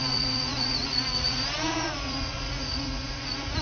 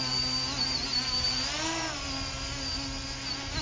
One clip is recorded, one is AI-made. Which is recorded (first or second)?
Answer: second